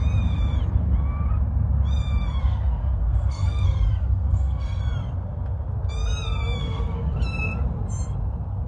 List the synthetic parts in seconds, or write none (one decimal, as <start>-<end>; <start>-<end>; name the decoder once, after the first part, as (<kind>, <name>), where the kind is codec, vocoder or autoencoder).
2.4-4.8 (codec, SNAC); 6.6-7.2